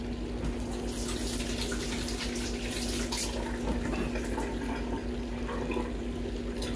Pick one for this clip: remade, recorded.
recorded